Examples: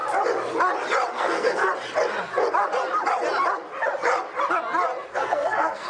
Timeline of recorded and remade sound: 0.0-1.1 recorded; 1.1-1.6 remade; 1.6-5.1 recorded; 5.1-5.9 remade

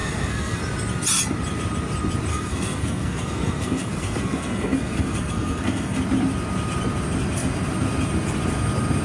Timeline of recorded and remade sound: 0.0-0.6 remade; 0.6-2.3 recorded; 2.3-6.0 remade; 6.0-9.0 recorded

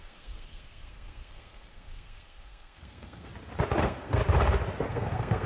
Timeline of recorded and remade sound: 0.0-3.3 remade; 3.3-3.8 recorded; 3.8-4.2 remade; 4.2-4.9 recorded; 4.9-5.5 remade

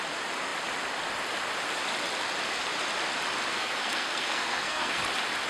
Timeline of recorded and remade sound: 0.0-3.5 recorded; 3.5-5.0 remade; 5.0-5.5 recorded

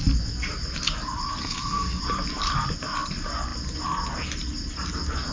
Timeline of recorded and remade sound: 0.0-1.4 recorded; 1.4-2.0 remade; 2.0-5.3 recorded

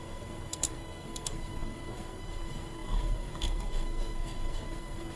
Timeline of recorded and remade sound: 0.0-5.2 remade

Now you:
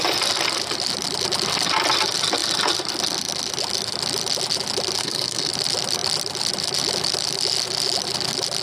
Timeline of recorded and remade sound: 0.0-5.0 recorded; 5.0-5.5 remade; 5.5-8.6 recorded

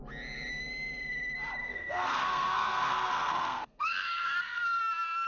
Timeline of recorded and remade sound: 0.0-1.6 recorded; 1.6-4.8 remade; 4.8-5.3 recorded